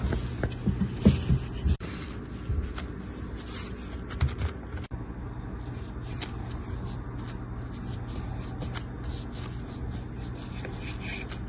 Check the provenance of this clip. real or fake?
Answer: real